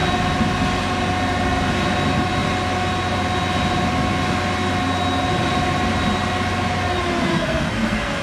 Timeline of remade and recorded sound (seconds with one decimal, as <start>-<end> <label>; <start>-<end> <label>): 0.0-7.3 recorded; 7.3-8.2 remade